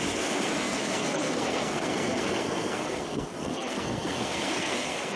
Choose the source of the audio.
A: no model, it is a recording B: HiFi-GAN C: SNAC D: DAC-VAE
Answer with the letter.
C